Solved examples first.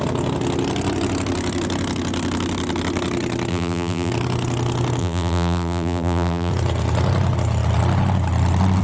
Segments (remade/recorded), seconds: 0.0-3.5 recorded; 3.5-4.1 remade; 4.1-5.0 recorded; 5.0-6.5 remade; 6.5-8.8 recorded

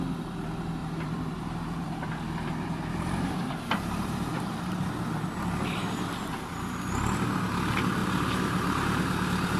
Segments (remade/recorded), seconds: 0.0-0.8 recorded; 0.8-4.7 remade; 4.7-8.0 recorded; 8.0-9.6 remade

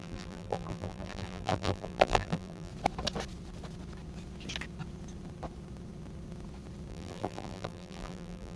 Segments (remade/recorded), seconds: 0.0-2.7 remade; 2.7-6.9 recorded; 6.9-8.6 remade

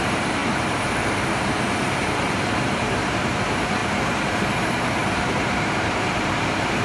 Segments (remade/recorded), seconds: 0.0-6.8 remade

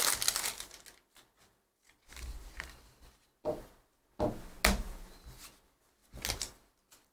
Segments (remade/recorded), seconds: 0.0-7.1 recorded

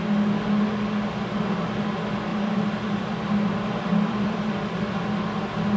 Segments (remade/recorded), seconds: 0.0-2.3 recorded; 2.3-4.9 remade; 4.9-5.8 recorded

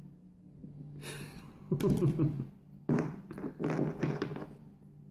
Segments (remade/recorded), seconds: 0.0-0.6 recorded; 0.6-1.2 remade; 1.2-4.3 recorded; 4.3-5.1 remade

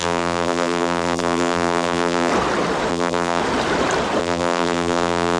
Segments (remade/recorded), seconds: 0.0-2.3 remade; 2.3-2.9 recorded; 2.9-3.4 remade; 3.4-4.2 recorded; 4.2-5.4 remade